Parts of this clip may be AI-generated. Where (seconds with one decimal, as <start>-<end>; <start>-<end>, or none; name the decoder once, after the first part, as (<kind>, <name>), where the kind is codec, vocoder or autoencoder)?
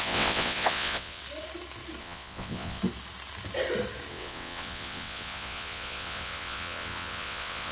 0.0-1.2 (vocoder, WaveNeXt); 2.0-2.8; 4.1-7.7